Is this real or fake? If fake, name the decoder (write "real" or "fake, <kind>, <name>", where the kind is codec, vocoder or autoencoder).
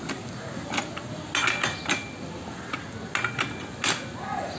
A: real